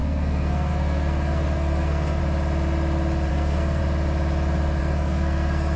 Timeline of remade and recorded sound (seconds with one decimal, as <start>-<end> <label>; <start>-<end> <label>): 0.0-2.2 remade; 2.2-3.3 recorded; 3.3-3.8 remade; 3.8-4.8 recorded; 4.8-5.8 remade